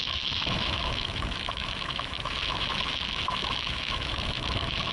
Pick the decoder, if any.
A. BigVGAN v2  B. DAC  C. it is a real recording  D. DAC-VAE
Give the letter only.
D